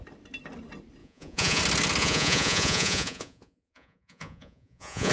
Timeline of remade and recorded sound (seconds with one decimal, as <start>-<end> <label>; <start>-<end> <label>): 0.0-1.0 recorded; 1.0-1.6 remade; 1.6-2.0 recorded; 2.0-5.1 remade